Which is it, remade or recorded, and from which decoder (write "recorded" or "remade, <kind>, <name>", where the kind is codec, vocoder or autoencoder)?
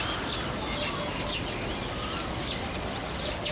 recorded